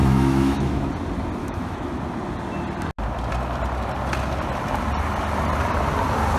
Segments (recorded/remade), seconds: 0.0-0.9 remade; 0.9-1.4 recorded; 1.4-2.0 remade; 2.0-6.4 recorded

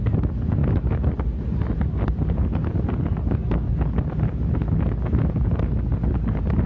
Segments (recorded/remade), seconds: 0.0-6.7 recorded

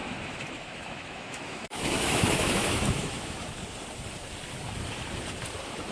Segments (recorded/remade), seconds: 0.0-3.5 remade; 3.5-5.9 recorded

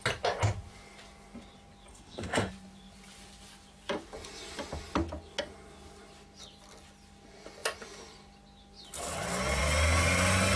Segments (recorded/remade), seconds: 0.0-1.9 recorded; 1.9-2.5 remade; 2.5-10.6 recorded

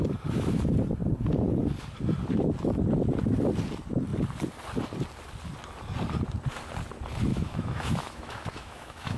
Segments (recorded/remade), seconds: 0.0-7.3 recorded; 7.3-9.2 remade

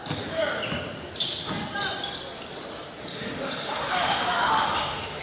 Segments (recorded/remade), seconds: 0.0-3.0 recorded; 3.0-5.2 remade